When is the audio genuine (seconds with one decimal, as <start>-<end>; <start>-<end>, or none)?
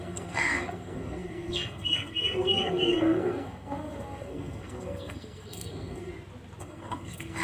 6.1-6.6